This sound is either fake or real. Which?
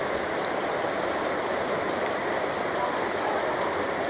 real